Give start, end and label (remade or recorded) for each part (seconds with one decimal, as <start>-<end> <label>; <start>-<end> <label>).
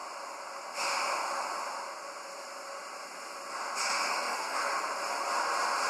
0.0-4.1 recorded; 4.1-4.7 remade; 4.7-5.9 recorded